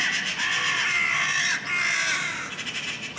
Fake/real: real